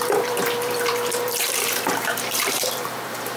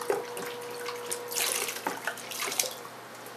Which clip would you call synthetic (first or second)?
first